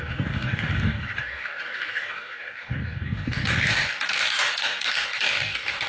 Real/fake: fake